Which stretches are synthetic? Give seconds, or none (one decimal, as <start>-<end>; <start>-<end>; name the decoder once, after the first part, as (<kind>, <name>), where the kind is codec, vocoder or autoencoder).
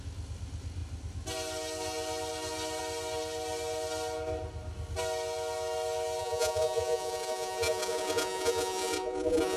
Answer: 6.2-9.6 (vocoder, Vocos)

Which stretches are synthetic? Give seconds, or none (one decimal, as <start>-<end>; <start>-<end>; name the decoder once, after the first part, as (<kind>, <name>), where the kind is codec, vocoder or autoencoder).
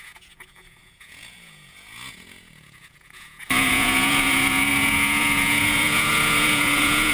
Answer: 0.0-7.1 (vocoder, Vocos)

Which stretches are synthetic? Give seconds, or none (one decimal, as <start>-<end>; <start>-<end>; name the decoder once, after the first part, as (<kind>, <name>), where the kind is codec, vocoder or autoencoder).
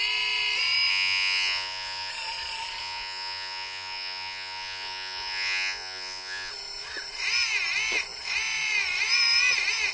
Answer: 0.9-2.1 (vocoder, Vocos); 2.8-6.5